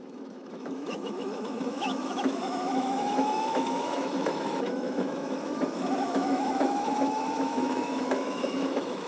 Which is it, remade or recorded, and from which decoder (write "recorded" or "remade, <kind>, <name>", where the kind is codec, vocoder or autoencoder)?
remade, autoencoder, DAC-VAE